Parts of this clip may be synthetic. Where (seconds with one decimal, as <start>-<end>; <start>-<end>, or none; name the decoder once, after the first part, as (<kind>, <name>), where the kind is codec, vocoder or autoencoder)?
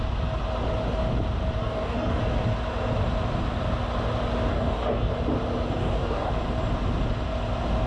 1.6-2.2 (codec, DAC); 4.5-5.1; 5.8-6.3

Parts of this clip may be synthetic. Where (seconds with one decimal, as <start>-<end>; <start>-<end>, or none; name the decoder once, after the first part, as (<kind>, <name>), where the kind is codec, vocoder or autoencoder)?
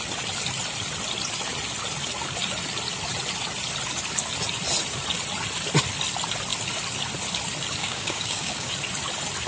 7.8-8.7 (codec, DAC)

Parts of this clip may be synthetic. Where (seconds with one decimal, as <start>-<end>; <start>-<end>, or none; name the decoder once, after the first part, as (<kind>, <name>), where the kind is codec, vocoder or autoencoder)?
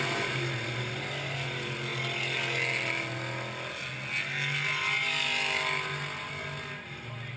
none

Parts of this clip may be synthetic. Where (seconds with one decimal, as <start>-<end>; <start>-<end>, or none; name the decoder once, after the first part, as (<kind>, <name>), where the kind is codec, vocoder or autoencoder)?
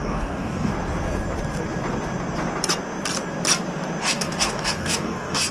0.0-0.7 (codec, DAC); 4.0-5.5